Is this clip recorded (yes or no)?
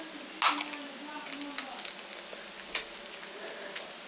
yes